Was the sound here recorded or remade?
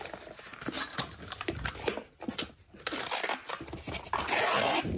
recorded